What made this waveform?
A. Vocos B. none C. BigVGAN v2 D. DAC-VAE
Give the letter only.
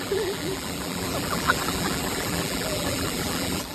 C